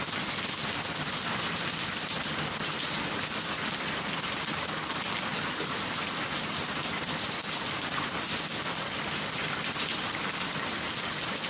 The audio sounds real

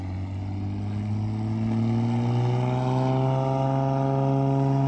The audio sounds real